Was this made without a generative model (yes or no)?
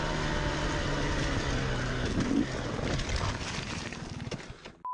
yes